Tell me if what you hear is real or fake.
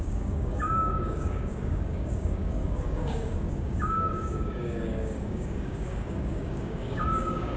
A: fake